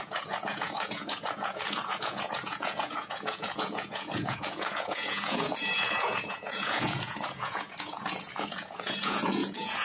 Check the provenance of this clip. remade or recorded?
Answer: remade